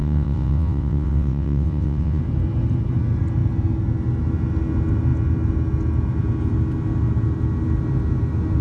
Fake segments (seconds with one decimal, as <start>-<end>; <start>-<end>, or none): 0.0-2.2